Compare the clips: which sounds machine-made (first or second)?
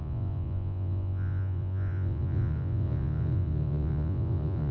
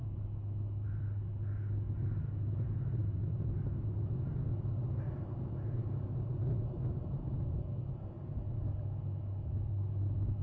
first